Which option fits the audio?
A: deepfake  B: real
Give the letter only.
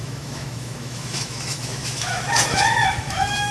A